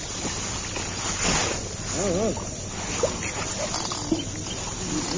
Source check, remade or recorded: recorded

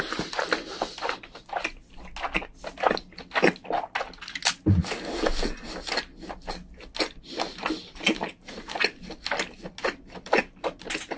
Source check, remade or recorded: recorded